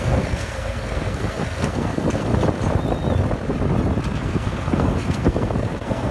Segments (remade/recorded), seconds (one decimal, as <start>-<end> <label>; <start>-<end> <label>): 0.0-2.3 remade; 2.3-4.1 recorded; 4.1-6.1 remade